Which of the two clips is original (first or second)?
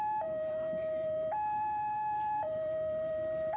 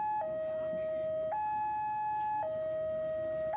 second